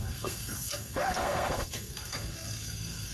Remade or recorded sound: remade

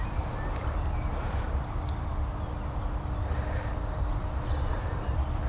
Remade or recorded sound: recorded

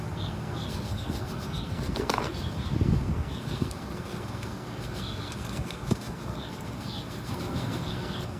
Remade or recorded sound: remade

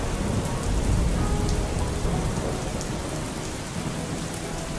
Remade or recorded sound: recorded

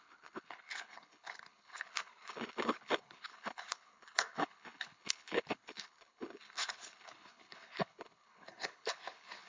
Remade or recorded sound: remade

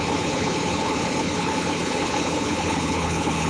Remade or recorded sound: remade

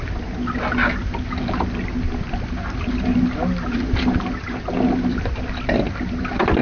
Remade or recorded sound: recorded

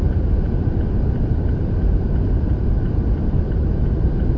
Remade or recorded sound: recorded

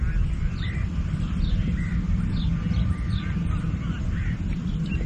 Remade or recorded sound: recorded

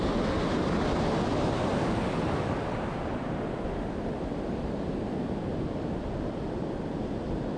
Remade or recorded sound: recorded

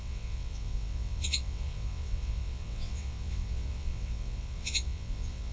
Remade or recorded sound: remade